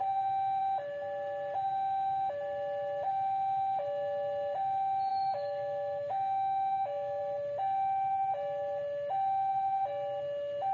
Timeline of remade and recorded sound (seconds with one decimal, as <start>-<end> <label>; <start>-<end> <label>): 0.0-5.1 recorded; 5.1-7.2 remade; 7.2-10.7 recorded